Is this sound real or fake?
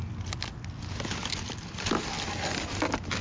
real